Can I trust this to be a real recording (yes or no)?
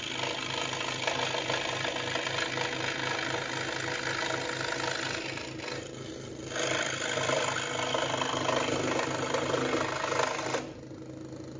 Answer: yes